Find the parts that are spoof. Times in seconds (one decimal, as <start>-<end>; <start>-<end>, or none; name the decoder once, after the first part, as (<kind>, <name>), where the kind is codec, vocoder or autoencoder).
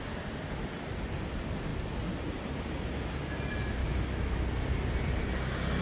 3.8-4.4 (autoencoder, DAC-VAE)